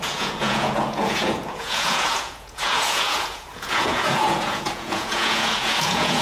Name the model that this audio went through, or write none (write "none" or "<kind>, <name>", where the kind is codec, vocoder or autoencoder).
vocoder, Vocos